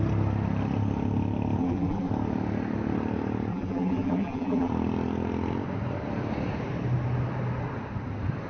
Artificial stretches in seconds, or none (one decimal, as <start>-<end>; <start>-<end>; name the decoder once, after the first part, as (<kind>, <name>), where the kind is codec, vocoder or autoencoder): 1.6-2.1 (vocoder, BigVGAN v2); 3.5-4.7